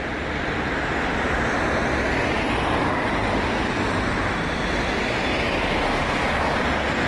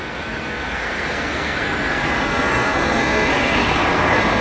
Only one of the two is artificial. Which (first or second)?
second